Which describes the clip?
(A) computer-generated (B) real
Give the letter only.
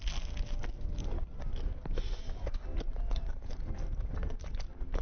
B